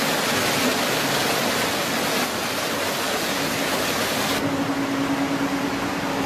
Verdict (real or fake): real